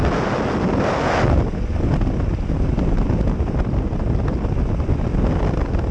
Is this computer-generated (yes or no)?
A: no